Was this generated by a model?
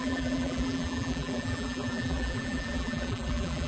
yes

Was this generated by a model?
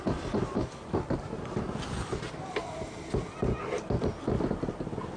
no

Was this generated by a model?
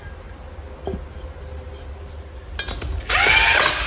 no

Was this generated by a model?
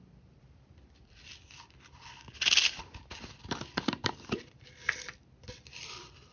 no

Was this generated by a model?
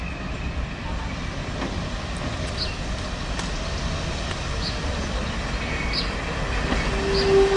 no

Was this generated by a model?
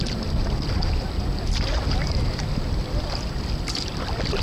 no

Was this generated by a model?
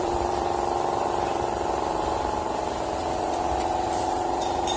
yes